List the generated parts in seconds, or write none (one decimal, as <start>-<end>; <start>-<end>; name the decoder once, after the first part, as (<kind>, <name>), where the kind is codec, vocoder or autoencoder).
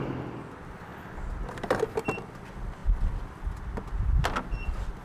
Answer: none